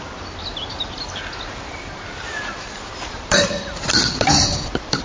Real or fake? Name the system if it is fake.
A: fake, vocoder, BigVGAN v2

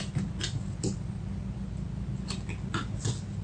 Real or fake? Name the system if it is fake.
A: real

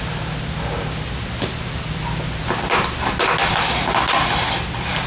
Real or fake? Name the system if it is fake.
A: real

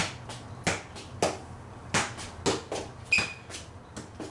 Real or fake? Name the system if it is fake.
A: real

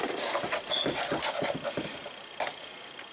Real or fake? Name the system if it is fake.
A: real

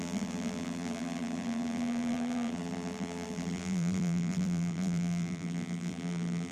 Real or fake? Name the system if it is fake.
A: fake, vocoder, BigVGAN v2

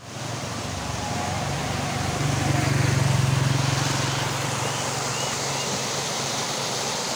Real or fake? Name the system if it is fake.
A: real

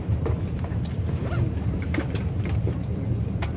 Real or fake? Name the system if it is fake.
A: fake, vocoder, BigVGAN v2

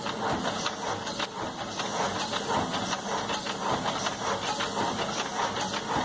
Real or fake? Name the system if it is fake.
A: real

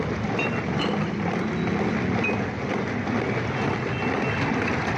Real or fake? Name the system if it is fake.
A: real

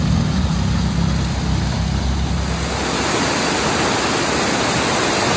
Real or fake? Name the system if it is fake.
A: real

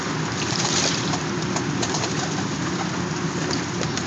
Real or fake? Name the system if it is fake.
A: fake, vocoder, BigVGAN v2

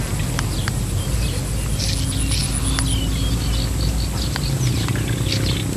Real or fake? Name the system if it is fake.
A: real